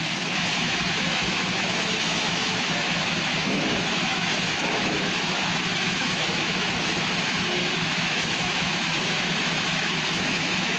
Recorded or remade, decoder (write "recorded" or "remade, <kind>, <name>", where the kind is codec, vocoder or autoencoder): remade, autoencoder, DAC-VAE